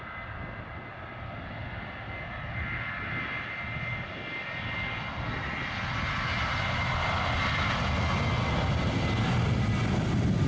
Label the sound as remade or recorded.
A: recorded